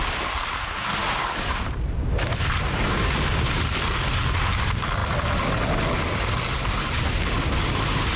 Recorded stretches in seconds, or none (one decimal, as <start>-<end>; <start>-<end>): 0.0-8.2